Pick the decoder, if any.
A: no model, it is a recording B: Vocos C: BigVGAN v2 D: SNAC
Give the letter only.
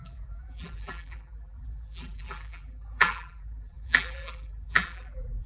C